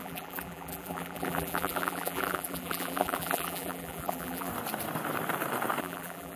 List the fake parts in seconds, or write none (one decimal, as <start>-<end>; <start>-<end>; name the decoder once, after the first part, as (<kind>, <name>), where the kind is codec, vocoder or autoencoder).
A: 0.0-4.5 (vocoder, BigVGAN v2); 5.8-6.4